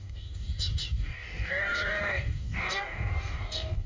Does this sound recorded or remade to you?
remade